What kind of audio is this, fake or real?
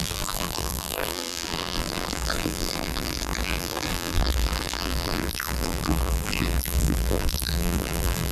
fake